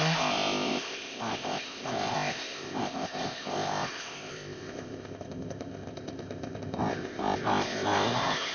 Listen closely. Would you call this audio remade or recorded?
remade